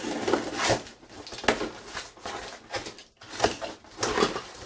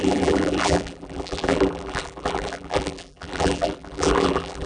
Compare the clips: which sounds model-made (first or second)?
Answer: second